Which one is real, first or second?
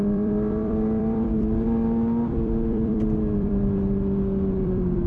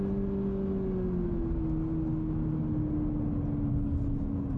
second